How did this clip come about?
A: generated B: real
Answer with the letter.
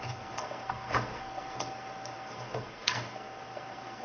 A